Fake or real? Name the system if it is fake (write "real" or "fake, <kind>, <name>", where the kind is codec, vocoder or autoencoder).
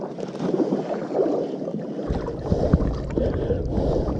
real